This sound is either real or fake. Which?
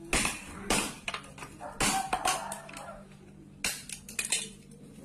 real